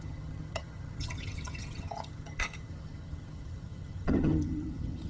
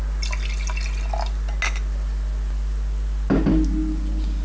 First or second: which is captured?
second